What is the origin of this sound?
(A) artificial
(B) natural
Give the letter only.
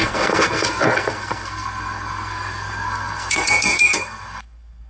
A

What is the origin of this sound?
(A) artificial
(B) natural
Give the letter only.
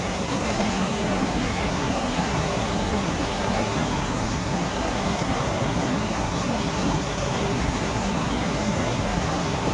A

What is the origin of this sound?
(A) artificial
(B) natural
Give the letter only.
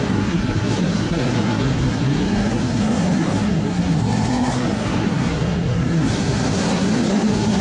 A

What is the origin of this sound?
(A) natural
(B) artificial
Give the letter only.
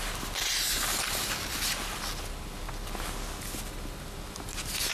A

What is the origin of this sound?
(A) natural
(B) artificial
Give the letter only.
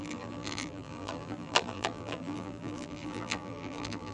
B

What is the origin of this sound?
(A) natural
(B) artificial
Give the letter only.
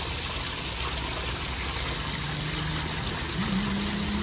A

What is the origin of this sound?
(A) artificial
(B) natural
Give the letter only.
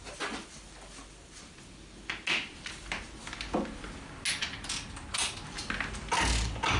B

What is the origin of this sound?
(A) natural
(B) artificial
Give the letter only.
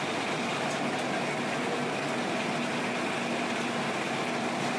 A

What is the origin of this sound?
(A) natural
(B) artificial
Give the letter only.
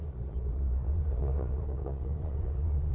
B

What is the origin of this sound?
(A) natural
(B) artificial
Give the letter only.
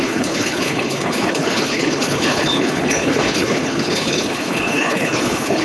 B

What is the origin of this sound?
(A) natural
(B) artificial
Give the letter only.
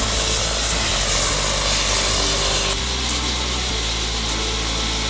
A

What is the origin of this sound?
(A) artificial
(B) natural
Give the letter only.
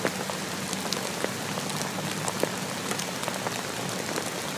B